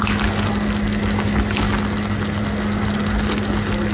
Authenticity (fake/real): real